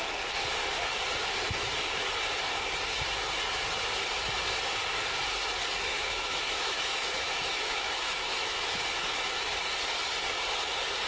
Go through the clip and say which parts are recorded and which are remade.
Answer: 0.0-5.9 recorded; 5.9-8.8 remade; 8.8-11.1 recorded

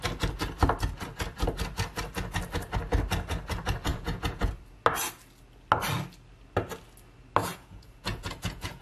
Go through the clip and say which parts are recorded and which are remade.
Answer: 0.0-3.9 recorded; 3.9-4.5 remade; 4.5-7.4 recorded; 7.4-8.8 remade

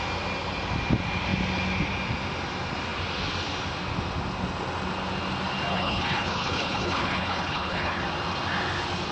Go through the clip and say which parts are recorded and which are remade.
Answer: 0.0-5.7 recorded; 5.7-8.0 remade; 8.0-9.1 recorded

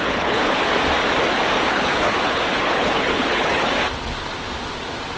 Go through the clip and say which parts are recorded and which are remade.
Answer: 0.0-0.7 remade; 0.7-1.7 recorded; 1.7-3.7 remade; 3.7-5.2 recorded

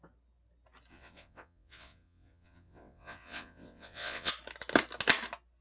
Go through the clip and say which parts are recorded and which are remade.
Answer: 0.0-0.9 recorded; 0.9-4.3 remade; 4.3-5.6 recorded